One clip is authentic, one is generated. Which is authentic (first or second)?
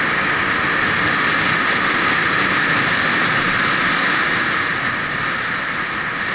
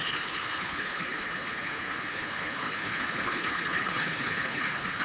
first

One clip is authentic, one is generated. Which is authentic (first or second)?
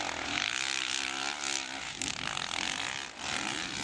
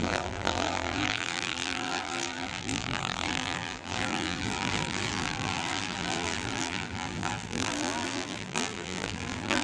first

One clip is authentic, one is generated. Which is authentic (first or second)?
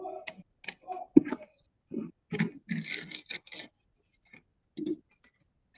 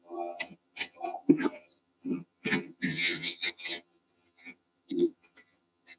first